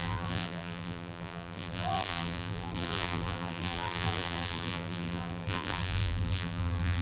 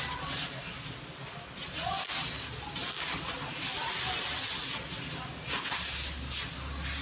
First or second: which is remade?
first